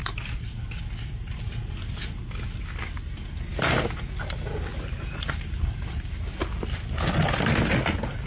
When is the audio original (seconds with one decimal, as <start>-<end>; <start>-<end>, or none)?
0.0-8.3